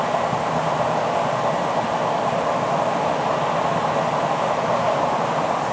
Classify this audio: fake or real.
real